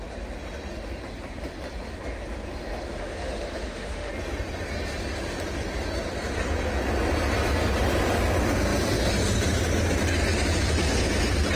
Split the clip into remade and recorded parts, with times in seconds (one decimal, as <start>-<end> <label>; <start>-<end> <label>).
0.0-3.0 recorded; 3.0-4.1 remade; 4.1-11.6 recorded